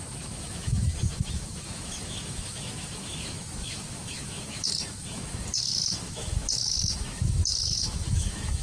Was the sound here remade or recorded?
remade